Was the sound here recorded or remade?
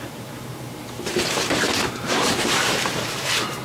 remade